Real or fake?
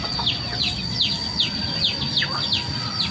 real